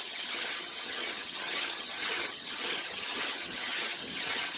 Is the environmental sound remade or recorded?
remade